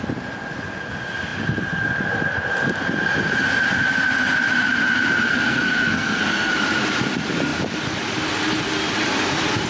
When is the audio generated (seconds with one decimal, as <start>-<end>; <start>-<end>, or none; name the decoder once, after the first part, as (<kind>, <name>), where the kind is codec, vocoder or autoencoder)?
5.3-6.5 (codec, SNAC)